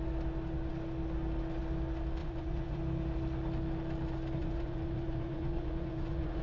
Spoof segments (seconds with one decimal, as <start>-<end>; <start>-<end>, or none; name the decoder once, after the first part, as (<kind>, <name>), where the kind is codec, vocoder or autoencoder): 2.2-2.8 (vocoder, Vocos); 4.4-6.4